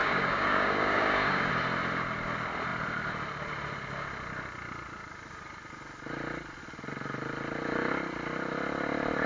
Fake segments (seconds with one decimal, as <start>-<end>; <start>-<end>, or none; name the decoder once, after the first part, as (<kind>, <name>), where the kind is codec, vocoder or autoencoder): 0.0-1.5 (codec, DAC)